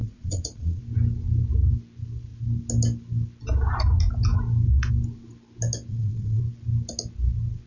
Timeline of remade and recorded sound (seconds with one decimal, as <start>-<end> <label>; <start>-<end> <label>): 0.0-0.8 remade; 0.8-5.9 recorded; 5.9-6.4 remade; 6.4-7.7 recorded